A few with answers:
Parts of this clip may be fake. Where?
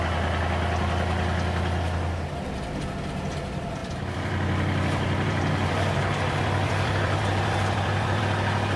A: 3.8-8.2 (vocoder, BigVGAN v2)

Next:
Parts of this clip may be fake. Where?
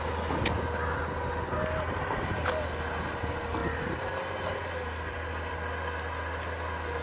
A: none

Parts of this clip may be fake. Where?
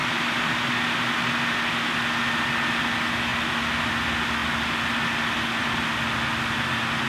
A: 0.0-0.7 (vocoder, BigVGAN v2)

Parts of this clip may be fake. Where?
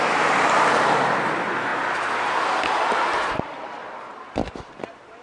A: 0.0-1.7 (vocoder, BigVGAN v2); 3.4-5.2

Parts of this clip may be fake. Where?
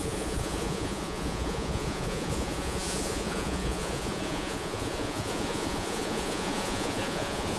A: 0.0-7.6 (vocoder, Vocos)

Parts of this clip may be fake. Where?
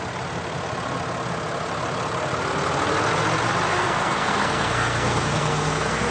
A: 3.7-6.1 (codec, SNAC)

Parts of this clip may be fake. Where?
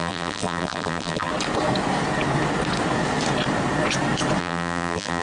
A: 0.0-1.3 (vocoder, BigVGAN v2); 4.4-5.2